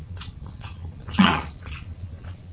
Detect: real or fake fake